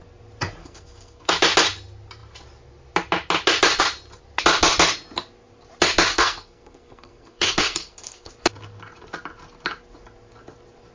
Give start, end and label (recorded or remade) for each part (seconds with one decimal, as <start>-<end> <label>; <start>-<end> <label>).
0.0-0.6 recorded; 0.6-1.3 remade; 1.3-6.1 recorded; 6.1-8.3 remade; 8.3-10.9 recorded